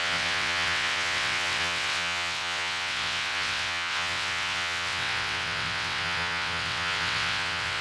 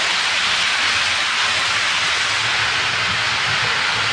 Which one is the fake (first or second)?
first